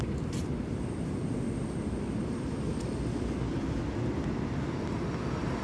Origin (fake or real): real